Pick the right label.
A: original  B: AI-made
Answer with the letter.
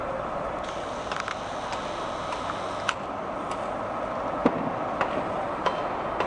A